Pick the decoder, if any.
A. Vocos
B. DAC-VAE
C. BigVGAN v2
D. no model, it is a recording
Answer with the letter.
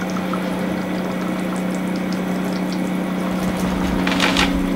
D